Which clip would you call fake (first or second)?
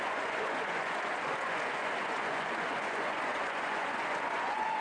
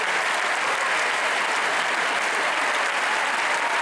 first